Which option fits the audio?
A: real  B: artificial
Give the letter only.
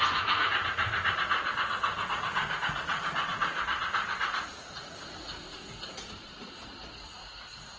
B